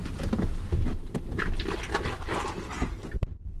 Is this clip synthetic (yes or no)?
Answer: no